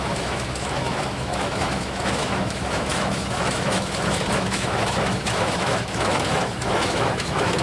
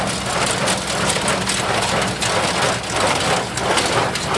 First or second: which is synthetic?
first